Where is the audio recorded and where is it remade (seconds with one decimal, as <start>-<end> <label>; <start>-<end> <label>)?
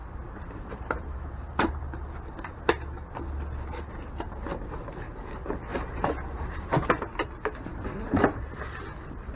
0.0-1.8 remade; 1.8-5.7 recorded; 5.7-6.9 remade; 6.9-9.4 recorded